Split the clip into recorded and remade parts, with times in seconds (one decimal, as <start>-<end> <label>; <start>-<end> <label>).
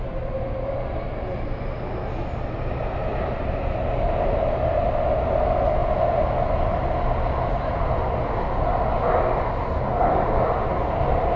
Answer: 0.0-11.4 recorded